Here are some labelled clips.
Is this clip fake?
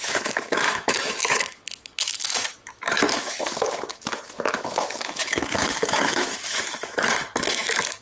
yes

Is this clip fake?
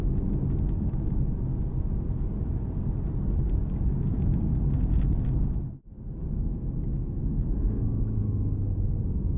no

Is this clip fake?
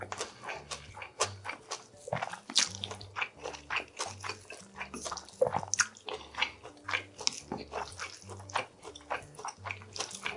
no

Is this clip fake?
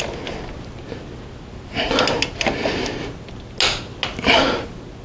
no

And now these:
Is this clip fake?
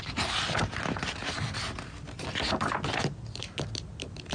no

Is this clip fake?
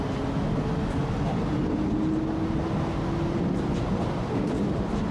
no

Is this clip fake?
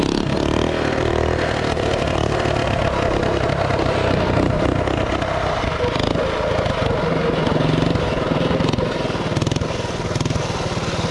no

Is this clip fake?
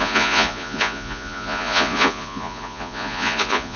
yes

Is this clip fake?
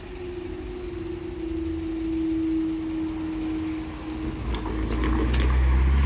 no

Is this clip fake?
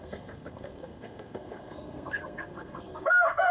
yes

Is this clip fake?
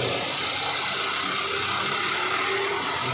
no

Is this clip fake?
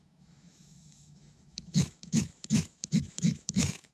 yes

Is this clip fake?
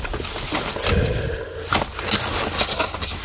no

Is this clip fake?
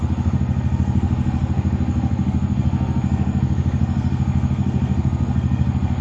yes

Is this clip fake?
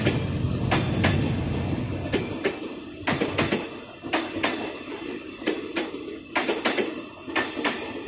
no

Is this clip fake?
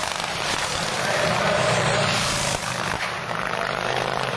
yes